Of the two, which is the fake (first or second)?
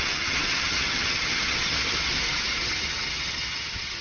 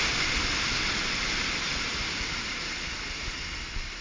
first